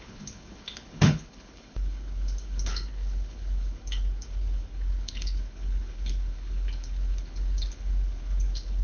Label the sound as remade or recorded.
remade